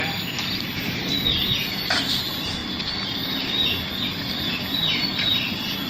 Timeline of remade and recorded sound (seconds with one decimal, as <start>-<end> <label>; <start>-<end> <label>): 0.0-5.9 recorded